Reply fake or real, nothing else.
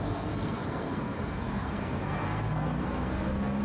fake